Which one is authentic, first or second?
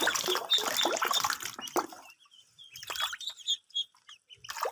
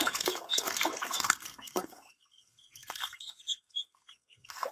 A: first